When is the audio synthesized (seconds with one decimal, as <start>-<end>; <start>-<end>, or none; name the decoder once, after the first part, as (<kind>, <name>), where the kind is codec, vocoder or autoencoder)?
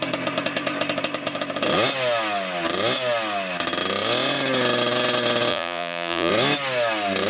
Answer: 5.5-6.3 (vocoder, Vocos)